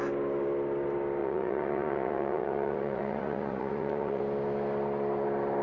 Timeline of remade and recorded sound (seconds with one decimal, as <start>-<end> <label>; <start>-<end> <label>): 0.0-1.2 recorded; 1.2-4.2 remade; 4.2-5.6 recorded